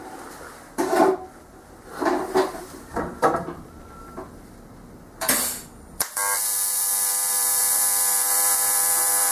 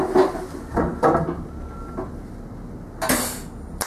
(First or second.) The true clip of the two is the second